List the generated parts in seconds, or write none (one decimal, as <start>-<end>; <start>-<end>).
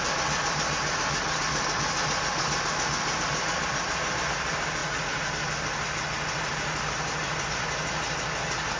4.8-5.3